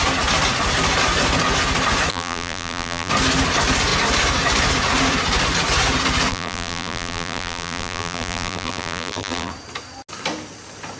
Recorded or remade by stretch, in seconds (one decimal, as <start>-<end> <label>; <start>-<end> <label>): 0.0-2.1 recorded; 2.1-3.1 remade; 3.1-6.3 recorded; 6.3-9.5 remade; 9.5-11.0 recorded